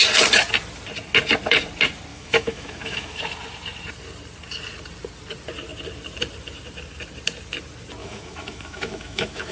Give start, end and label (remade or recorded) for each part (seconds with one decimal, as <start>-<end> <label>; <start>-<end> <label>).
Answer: 0.0-2.1 recorded; 2.1-3.2 remade; 3.2-8.0 recorded; 8.0-9.5 remade